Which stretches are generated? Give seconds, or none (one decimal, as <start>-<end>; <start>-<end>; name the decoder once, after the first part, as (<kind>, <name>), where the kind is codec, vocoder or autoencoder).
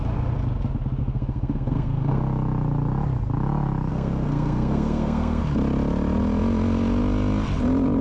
1.0-2.2 (codec, SNAC); 3.9-5.4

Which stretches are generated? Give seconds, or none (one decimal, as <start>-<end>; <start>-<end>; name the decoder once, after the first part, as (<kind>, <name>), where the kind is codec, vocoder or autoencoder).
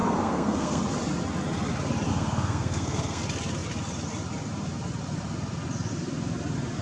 0.0-0.8 (codec, SNAC); 2.1-3.2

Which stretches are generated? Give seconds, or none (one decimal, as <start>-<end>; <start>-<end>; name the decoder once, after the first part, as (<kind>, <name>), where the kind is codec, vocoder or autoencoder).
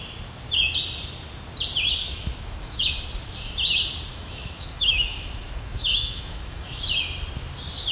2.0-2.9 (autoencoder, DAC-VAE); 4.1-6.8